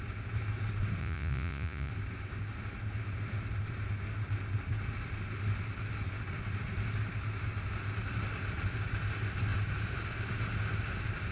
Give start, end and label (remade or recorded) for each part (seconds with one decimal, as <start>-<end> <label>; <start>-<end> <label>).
0.0-1.0 recorded; 1.0-1.9 remade; 1.9-11.3 recorded